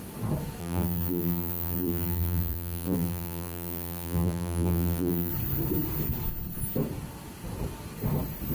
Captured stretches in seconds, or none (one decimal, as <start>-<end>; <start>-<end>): 0.0-0.6; 5.3-8.5